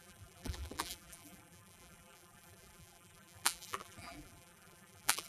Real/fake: fake